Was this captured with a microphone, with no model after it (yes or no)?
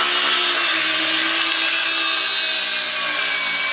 yes